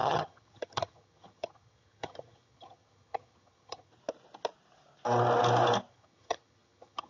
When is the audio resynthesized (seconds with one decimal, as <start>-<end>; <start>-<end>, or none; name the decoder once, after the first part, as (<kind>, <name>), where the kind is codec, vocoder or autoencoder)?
0.0-3.9 (vocoder, HiFi-GAN); 5.9-7.1